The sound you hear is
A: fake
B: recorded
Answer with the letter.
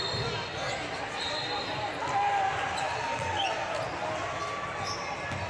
B